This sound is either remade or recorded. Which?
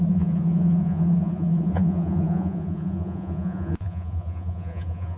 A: remade